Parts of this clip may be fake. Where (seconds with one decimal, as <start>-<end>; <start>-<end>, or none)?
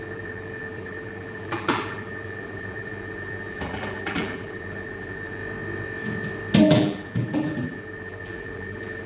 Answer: 0.0-5.4; 6.6-9.1